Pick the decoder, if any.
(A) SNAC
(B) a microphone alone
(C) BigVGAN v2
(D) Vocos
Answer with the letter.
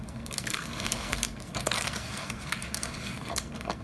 A